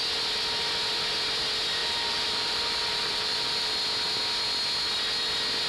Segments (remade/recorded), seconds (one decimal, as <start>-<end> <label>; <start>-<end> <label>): 0.0-1.8 recorded; 1.8-3.7 remade; 3.7-5.7 recorded